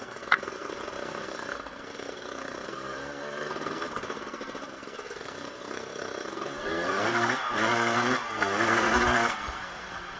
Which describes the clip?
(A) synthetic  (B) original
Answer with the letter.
A